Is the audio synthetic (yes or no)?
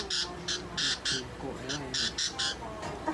no